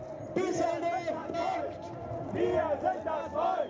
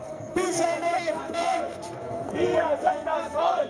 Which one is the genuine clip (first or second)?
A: first